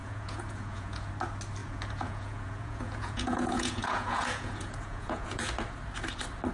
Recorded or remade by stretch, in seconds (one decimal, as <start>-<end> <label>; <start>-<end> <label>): 0.0-1.1 remade; 1.1-1.6 recorded; 1.6-5.5 remade; 5.5-6.5 recorded